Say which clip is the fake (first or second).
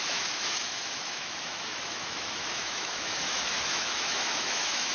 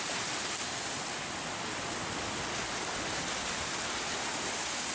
first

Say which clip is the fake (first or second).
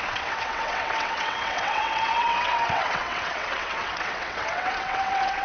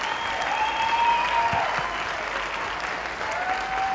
first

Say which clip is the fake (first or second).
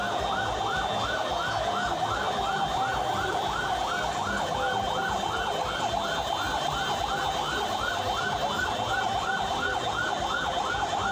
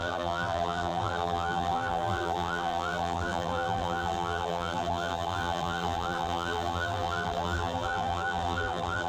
second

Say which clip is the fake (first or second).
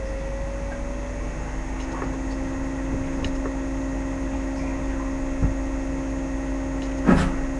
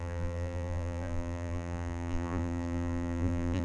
second